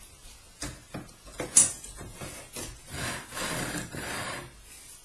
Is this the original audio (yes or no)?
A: yes